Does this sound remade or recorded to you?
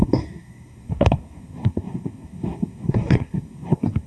remade